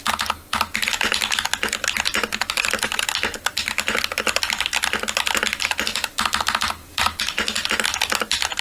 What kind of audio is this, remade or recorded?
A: recorded